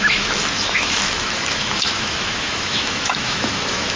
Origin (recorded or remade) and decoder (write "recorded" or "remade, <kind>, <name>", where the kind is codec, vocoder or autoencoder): remade, autoencoder, DAC-VAE